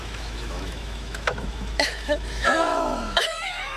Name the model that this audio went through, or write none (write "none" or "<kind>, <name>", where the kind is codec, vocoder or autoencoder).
autoencoder, DAC-VAE